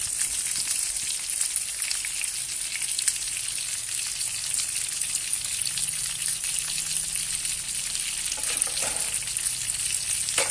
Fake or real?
real